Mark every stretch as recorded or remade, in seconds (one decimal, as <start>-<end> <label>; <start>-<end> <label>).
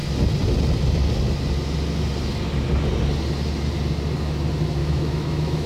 0.0-4.8 recorded; 4.8-5.7 remade